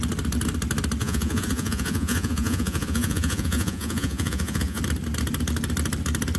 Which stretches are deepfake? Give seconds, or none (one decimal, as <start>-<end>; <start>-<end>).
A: 1.0-4.8